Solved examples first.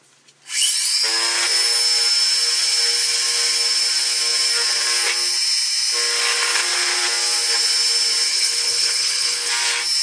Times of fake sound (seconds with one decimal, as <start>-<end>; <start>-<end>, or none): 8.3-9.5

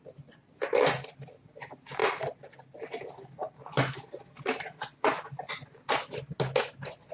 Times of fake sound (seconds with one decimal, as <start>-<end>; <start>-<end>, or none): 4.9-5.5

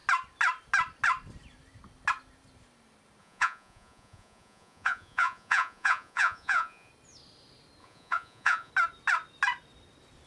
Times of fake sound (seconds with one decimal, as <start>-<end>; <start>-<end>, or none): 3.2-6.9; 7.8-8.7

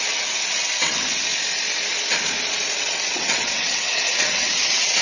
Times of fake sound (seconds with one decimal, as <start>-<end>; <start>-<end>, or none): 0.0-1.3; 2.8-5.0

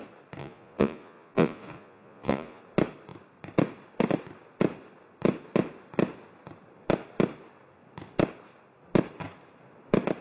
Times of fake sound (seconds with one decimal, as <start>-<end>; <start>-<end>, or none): 0.4-2.6

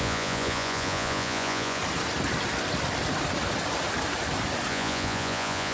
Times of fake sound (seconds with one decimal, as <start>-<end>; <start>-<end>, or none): 0.0-1.8; 4.7-5.7

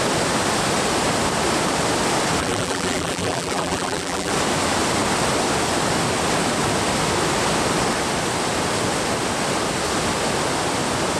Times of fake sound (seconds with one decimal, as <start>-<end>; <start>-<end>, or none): 2.4-4.3

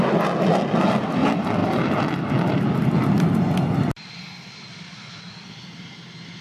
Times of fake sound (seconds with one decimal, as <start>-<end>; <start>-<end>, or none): none